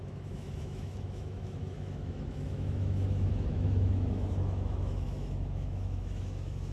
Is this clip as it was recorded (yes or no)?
no